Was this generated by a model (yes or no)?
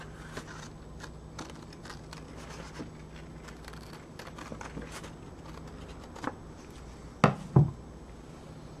no